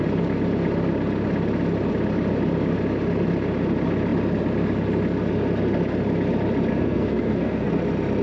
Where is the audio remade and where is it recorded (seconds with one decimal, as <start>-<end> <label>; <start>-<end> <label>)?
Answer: 0.0-6.7 recorded; 6.7-7.7 remade; 7.7-8.2 recorded